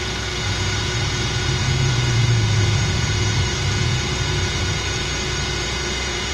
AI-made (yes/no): yes